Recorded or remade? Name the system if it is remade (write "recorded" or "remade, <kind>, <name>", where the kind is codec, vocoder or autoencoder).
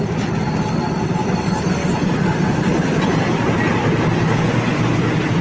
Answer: recorded